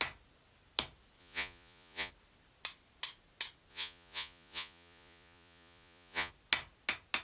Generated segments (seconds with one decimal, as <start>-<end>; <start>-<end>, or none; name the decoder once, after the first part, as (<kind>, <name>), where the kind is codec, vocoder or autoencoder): 1.2-2.1 (vocoder, Vocos); 3.7-6.3

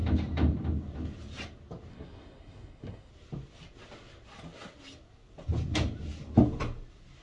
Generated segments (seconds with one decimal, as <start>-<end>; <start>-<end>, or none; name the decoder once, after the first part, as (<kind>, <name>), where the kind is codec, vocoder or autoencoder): 1.9-3.1 (codec, SNAC)

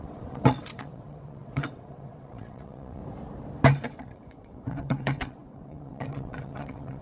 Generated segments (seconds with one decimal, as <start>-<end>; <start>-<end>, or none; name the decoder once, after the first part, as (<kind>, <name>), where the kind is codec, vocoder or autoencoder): 0.0-3.0 (vocoder, WaveNeXt); 3.8-7.0

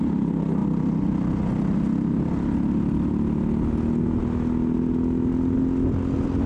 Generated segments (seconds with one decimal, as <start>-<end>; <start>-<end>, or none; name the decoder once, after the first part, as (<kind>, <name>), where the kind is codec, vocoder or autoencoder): none

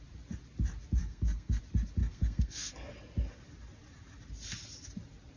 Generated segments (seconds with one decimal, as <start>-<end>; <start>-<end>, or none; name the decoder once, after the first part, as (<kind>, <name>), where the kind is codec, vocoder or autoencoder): 1.0-1.6 (codec, SNAC); 2.0-2.7

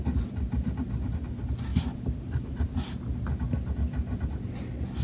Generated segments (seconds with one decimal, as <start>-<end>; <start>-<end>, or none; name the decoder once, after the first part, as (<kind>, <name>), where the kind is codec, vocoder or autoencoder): 1.7-3.0 (vocoder, BigVGAN v2)

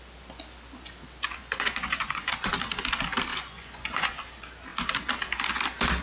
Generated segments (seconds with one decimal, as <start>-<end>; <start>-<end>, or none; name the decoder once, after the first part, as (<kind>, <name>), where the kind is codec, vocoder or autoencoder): 1.4-2.5 (vocoder, Vocos); 3.3-4.2